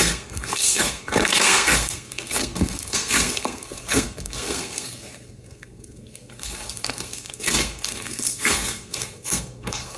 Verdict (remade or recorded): remade